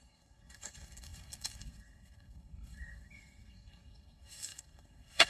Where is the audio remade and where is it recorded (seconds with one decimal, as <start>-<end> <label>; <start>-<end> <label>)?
0.0-5.3 remade